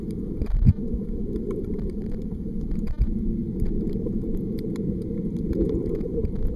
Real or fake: fake